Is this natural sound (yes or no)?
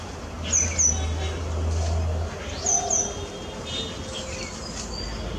yes